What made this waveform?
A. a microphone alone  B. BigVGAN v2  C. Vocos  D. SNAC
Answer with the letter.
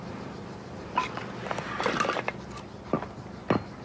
A